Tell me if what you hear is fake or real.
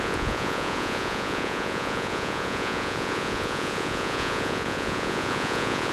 fake